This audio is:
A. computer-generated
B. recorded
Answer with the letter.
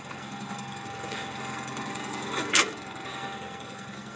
A